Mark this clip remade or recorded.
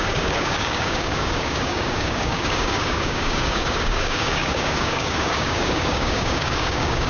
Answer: remade